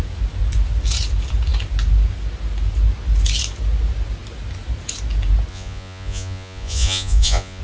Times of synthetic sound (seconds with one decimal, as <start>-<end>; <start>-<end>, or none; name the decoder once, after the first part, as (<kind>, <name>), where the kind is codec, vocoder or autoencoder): 5.5-7.6 (vocoder, Vocos)